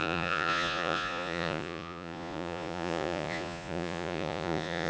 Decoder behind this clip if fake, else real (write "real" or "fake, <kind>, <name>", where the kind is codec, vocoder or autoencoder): fake, vocoder, Vocos